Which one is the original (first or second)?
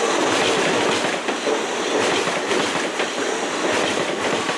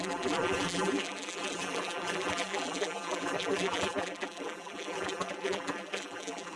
first